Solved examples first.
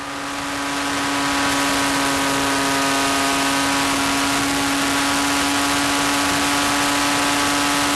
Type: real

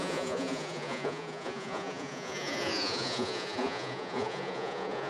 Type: fake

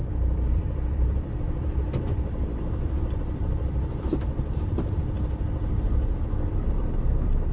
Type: fake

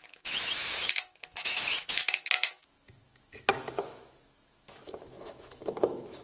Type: fake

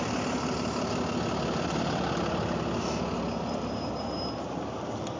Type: real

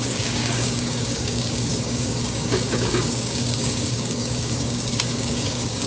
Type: fake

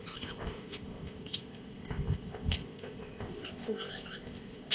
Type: fake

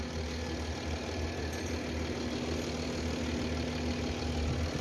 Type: real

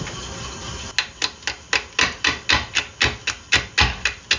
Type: real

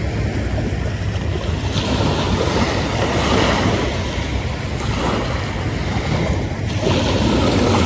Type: real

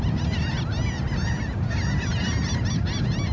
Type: real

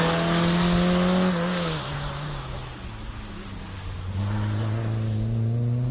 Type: real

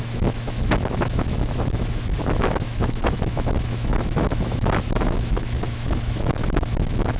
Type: fake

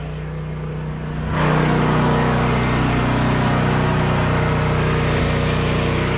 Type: real